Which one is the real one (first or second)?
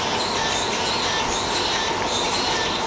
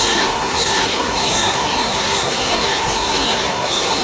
first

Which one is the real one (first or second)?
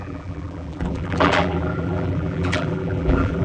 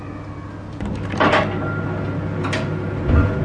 second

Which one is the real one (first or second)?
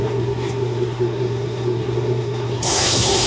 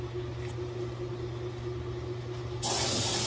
second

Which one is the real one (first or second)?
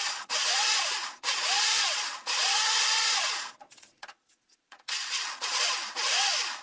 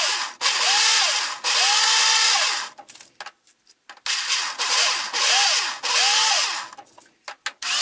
second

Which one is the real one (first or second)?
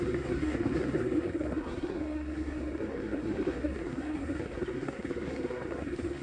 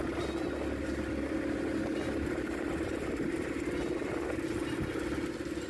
second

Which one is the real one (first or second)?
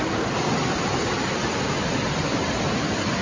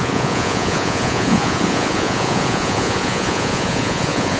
first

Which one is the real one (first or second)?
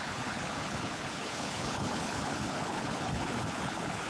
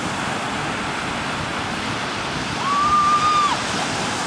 second